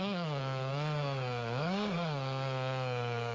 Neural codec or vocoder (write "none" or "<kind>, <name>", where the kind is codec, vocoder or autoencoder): codec, SNAC